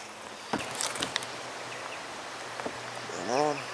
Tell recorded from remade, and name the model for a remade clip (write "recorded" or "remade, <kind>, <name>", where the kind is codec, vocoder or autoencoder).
recorded